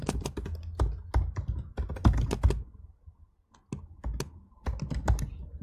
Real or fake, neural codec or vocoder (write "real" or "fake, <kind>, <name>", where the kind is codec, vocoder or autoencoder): real